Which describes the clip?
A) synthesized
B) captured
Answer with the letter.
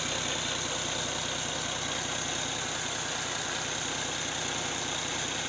B